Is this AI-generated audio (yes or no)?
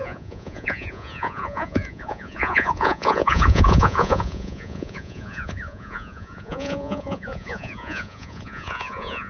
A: yes